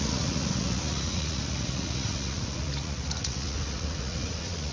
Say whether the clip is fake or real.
fake